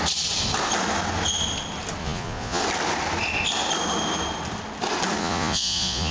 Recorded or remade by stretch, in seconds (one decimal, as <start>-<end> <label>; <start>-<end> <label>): 0.0-2.0 recorded; 2.0-2.6 remade; 2.6-5.2 recorded; 5.2-6.1 remade